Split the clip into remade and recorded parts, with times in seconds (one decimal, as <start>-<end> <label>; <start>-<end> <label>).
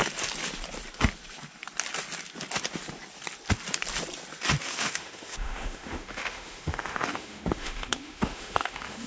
0.0-4.6 recorded; 4.6-9.1 remade